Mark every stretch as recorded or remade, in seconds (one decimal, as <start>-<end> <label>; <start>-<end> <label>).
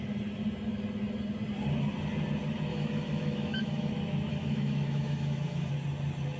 0.0-2.7 recorded; 2.7-3.9 remade; 3.9-4.3 recorded; 4.3-5.7 remade; 5.7-6.4 recorded